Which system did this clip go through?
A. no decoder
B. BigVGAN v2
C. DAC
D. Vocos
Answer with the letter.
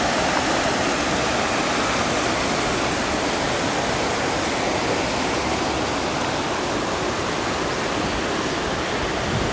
A